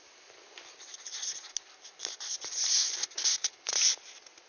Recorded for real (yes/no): yes